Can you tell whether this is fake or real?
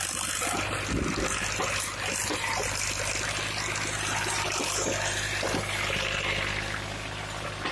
real